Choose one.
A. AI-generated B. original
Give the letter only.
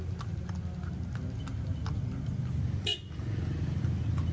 B